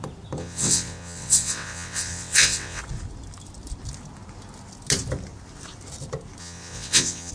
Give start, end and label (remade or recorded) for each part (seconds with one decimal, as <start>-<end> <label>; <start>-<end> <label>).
0.0-0.4 recorded; 0.4-2.8 remade; 2.8-6.4 recorded; 6.4-7.3 remade